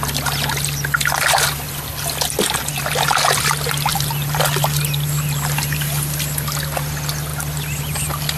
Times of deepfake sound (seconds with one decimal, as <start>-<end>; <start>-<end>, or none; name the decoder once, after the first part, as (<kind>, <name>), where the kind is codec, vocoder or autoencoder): 3.9-4.4 (vocoder, BigVGAN v2)